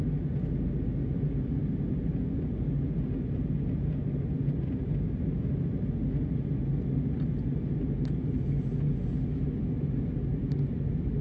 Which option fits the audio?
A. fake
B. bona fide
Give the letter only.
B